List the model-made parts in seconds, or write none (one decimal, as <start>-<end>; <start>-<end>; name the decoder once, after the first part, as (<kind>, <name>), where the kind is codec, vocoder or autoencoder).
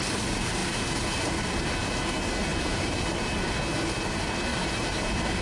2.5-3.2 (vocoder, BigVGAN v2); 4.5-5.4